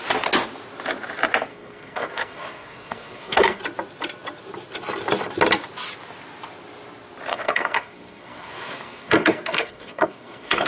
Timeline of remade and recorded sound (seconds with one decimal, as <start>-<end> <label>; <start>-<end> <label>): 0.0-1.5 recorded; 1.5-3.6 remade; 3.6-7.3 recorded; 7.3-10.7 remade